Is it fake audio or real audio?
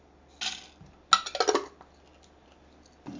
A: real